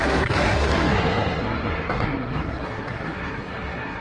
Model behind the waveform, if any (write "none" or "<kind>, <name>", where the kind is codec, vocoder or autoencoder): codec, SNAC